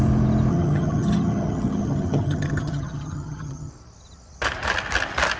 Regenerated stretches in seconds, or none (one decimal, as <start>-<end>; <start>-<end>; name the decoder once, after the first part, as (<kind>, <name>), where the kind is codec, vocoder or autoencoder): 0.5-3.7 (vocoder, HiFi-GAN)